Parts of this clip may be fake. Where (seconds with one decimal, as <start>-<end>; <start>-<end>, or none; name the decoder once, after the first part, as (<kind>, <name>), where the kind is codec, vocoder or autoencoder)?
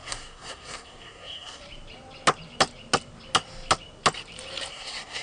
0.0-1.6 (codec, SNAC); 4.7-5.2